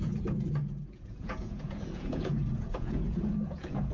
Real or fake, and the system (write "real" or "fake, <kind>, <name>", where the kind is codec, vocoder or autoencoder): fake, vocoder, Vocos